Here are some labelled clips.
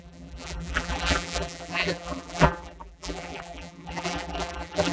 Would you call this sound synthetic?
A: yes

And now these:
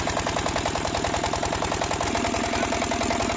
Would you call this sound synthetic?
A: no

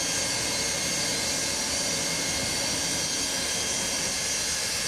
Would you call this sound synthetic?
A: no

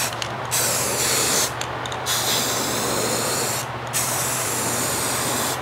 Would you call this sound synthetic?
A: yes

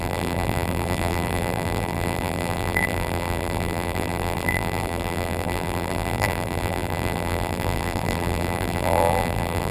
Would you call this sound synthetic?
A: yes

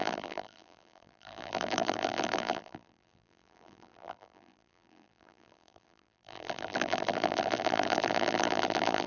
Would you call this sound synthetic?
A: yes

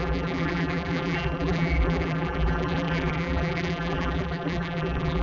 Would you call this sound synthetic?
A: yes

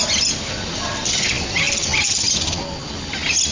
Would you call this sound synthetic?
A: no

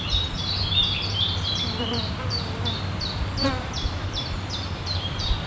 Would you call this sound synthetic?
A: yes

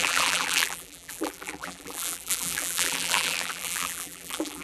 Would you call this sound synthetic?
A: yes